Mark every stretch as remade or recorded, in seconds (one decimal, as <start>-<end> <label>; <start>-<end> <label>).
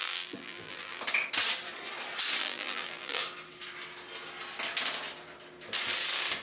0.0-1.0 remade; 1.0-2.4 recorded; 2.4-3.2 remade; 3.2-6.4 recorded